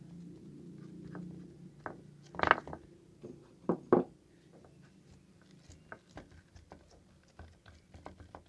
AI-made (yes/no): no